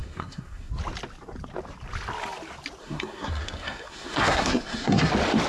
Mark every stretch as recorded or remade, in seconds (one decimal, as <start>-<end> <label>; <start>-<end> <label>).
0.0-0.7 remade; 0.7-2.8 recorded; 2.8-5.1 remade; 5.1-5.5 recorded